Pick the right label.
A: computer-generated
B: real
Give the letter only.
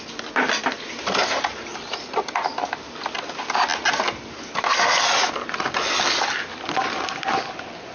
B